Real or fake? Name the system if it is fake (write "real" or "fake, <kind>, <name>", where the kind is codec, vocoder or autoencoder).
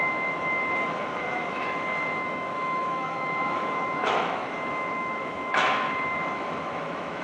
fake, autoencoder, DAC-VAE